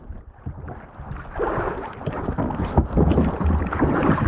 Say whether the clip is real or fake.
fake